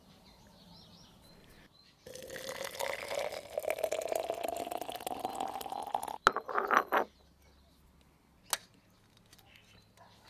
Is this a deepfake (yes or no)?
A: no